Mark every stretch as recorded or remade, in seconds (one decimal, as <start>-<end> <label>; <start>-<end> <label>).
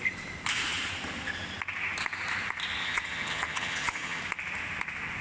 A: 0.0-2.8 recorded; 2.8-4.2 remade; 4.2-5.2 recorded